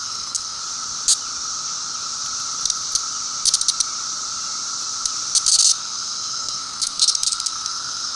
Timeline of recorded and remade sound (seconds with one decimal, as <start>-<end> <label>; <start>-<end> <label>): 0.0-0.6 remade; 0.6-5.5 recorded; 5.5-8.2 remade